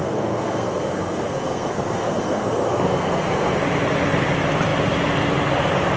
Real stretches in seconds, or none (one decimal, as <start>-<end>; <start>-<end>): 3.6-6.0